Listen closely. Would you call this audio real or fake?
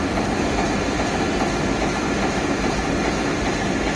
real